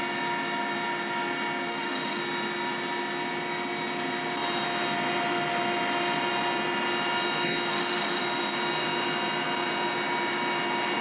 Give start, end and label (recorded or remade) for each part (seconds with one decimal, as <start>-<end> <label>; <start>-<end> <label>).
0.0-1.7 recorded; 1.7-2.2 remade; 2.2-7.7 recorded; 7.7-8.2 remade; 8.2-11.0 recorded